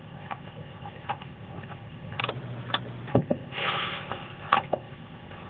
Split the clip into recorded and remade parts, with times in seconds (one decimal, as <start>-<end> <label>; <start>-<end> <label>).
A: 0.0-2.2 remade; 2.2-3.1 recorded; 3.1-5.5 remade